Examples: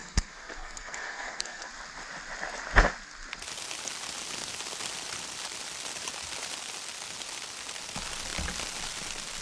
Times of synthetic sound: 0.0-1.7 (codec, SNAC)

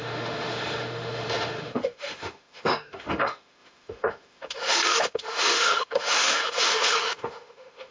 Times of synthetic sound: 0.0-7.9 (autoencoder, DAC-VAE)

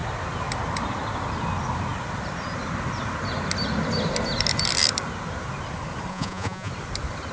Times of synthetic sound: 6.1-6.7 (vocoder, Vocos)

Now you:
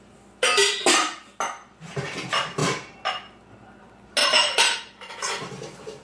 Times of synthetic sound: 4.2-5.1 (vocoder, BigVGAN v2)